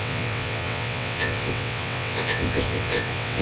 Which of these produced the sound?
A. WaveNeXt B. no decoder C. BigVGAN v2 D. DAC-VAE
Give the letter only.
A